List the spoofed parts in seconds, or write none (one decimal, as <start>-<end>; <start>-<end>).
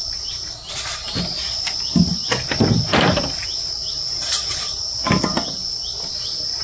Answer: none